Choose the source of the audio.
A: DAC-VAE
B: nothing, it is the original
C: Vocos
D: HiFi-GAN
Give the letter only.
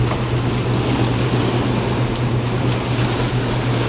B